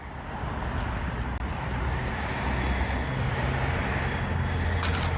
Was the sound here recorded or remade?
recorded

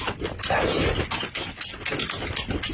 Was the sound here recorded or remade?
recorded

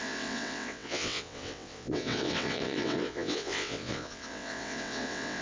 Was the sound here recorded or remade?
remade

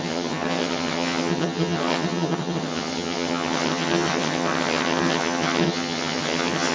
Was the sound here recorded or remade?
remade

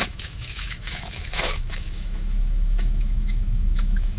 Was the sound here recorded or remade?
remade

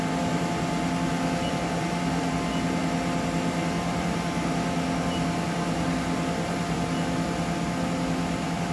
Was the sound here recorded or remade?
recorded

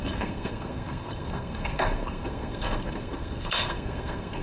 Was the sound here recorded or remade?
remade